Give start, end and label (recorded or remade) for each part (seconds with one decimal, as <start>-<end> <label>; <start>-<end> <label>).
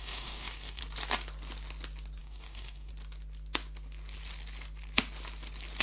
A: 0.0-0.8 remade; 0.8-2.2 recorded; 2.2-2.9 remade; 2.9-5.8 recorded